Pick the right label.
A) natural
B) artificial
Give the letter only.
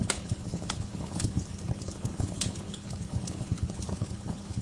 B